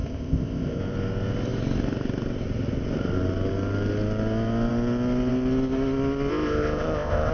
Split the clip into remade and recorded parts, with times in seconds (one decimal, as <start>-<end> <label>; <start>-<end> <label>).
0.0-0.8 remade; 0.8-6.3 recorded; 6.3-7.3 remade